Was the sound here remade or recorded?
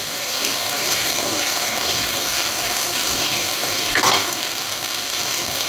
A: remade